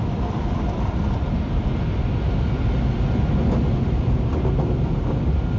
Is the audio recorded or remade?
recorded